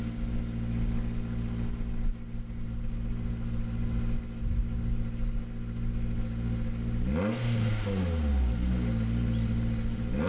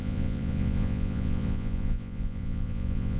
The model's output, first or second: second